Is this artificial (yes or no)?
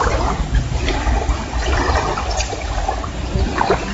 no